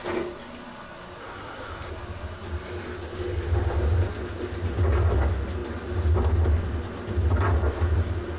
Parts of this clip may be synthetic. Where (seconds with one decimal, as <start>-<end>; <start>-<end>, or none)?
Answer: 1.2-1.9